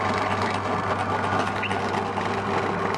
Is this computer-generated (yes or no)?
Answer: no